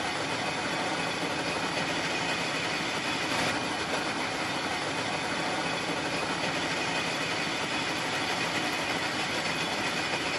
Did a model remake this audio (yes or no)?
no